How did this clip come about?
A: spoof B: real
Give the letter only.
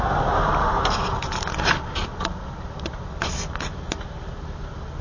B